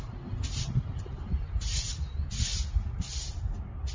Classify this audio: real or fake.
real